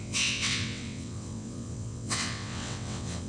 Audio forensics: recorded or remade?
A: remade